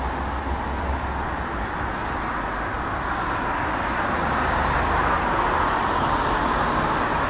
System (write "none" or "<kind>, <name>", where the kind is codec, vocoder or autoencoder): none